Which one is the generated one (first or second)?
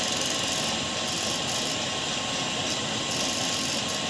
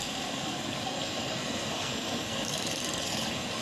second